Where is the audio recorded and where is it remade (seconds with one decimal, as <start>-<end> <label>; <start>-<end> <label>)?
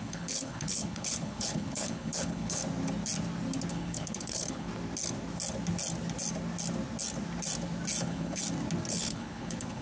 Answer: 0.0-2.6 remade; 2.6-3.7 recorded; 3.7-4.7 remade; 4.7-8.0 recorded; 8.0-8.4 remade; 8.4-8.9 recorded; 8.9-9.8 remade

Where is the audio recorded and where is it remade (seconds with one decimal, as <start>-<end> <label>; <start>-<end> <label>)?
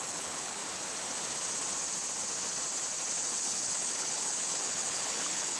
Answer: 0.0-0.6 remade; 0.6-3.1 recorded; 3.1-5.6 remade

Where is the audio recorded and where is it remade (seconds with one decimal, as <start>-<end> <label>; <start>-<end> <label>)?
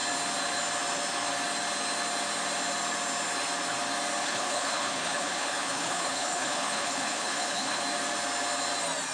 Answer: 0.0-4.2 recorded; 4.2-7.8 remade; 7.8-9.1 recorded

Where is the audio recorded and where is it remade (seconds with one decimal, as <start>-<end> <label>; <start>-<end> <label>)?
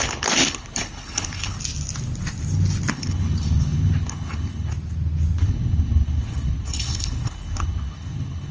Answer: 0.0-1.6 remade; 1.6-2.9 recorded; 2.9-4.7 remade; 4.7-5.4 recorded; 5.4-8.5 remade